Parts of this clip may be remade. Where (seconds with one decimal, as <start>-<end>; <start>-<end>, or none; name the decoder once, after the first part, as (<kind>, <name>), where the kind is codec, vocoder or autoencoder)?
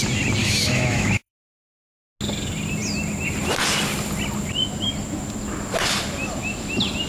0.4-1.3 (autoencoder, DAC-VAE)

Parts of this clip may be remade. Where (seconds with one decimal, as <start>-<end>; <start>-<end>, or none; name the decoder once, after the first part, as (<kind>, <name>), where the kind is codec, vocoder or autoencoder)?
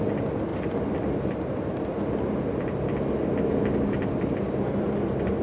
none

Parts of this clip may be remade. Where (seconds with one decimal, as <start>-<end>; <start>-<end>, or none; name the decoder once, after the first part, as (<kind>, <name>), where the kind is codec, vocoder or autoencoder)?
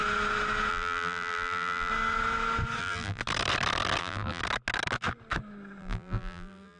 0.7-1.9 (vocoder, BigVGAN v2); 2.8-3.2; 4.0-4.4; 5.8-6.8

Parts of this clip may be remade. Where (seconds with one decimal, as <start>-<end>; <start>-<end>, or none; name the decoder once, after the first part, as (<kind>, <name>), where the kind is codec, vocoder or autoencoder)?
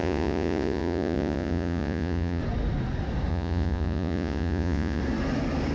0.0-2.4 (vocoder, Vocos); 3.3-5.0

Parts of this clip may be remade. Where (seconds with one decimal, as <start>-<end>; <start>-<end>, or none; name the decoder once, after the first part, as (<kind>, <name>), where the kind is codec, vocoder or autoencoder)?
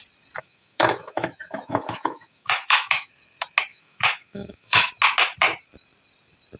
0.4-3.1 (autoencoder, DAC-VAE); 3.7-4.9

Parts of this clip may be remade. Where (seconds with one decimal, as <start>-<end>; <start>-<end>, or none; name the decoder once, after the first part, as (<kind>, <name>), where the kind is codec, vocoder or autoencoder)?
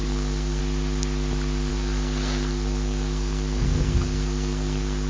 0.0-0.6 (codec, SNAC); 1.7-5.1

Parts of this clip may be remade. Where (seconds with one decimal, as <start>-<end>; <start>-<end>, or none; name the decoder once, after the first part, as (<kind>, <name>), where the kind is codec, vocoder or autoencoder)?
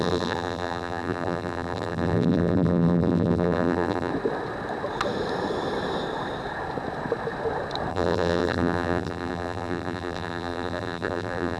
0.0-4.1 (vocoder, BigVGAN v2); 7.9-11.6